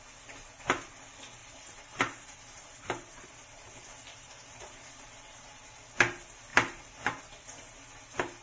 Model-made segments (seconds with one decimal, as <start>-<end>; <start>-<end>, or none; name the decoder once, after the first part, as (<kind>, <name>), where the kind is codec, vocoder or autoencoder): 1.4-5.9 (vocoder, BigVGAN v2); 6.5-7.2